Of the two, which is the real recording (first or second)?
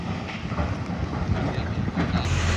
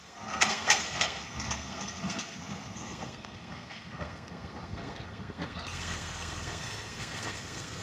first